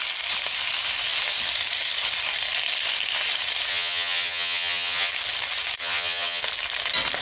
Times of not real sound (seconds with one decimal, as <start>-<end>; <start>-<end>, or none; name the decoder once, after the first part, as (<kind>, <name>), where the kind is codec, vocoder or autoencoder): 3.7-5.1 (vocoder, HiFi-GAN); 5.8-6.4